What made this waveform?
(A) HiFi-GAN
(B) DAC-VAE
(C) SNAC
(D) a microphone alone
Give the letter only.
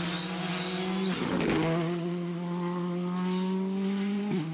D